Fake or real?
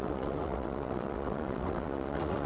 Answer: fake